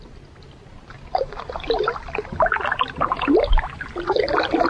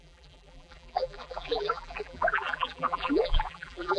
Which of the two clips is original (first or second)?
first